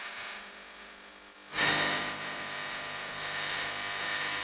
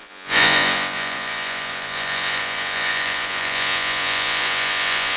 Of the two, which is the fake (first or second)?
second